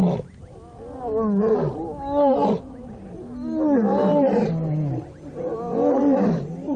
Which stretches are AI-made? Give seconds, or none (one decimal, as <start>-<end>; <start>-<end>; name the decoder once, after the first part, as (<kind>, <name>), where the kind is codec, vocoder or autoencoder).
none